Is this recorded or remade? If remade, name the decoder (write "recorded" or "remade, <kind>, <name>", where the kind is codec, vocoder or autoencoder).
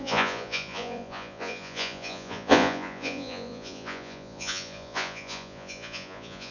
remade, vocoder, Vocos